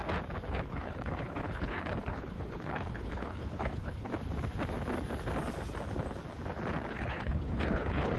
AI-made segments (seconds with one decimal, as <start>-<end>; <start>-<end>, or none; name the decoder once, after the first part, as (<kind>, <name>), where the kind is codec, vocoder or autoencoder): 0.5-4.1 (codec, HILCodec); 6.9-8.2